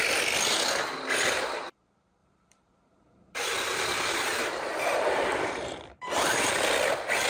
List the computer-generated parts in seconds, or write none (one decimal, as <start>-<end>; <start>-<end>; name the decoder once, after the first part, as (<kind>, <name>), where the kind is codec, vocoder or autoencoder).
2.2-6.6 (vocoder, BigVGAN v2)